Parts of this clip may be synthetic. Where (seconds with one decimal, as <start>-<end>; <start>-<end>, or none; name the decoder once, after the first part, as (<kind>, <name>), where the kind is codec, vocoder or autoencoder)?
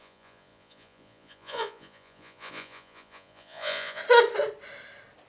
0.0-4.0 (vocoder, Vocos)